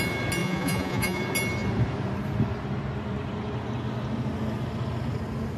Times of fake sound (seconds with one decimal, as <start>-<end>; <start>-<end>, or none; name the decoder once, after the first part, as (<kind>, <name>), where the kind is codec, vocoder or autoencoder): 0.4-1.2 (vocoder, Vocos)